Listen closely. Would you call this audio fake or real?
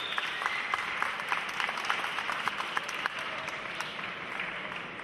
fake